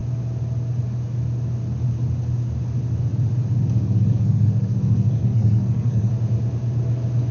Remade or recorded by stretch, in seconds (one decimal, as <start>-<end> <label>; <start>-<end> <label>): 0.0-3.8 recorded; 3.8-6.1 remade; 6.1-7.3 recorded

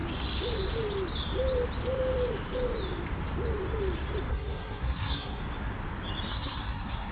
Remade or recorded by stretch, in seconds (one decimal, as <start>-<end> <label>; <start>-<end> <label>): 0.0-4.3 recorded; 4.3-5.4 remade; 5.4-6.3 recorded; 6.3-7.1 remade

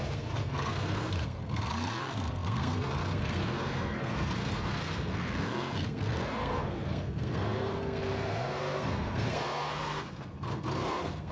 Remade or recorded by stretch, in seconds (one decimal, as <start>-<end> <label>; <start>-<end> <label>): 0.0-11.3 remade

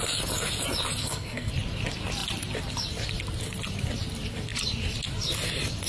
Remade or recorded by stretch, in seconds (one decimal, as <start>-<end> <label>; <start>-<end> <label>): 0.0-1.0 recorded; 1.0-1.5 remade; 1.5-5.9 recorded

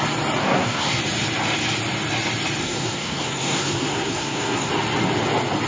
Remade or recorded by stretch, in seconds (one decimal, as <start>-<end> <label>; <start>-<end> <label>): 0.0-0.4 recorded; 0.4-1.0 remade; 1.0-2.6 recorded; 2.6-4.7 remade; 4.7-5.7 recorded

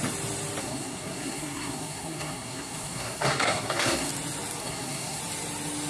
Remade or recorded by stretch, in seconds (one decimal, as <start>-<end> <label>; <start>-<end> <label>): 0.0-0.6 recorded; 0.6-4.1 remade; 4.1-4.6 recorded; 4.6-5.2 remade; 5.2-5.9 recorded